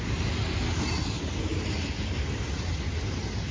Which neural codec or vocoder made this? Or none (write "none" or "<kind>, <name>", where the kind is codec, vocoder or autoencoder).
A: none